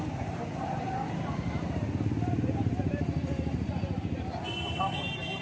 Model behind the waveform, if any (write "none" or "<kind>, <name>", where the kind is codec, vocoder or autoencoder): vocoder, BigVGAN v2